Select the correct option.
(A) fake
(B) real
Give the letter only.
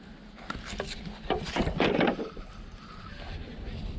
B